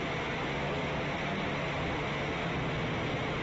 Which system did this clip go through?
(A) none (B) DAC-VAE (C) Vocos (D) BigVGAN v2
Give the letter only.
A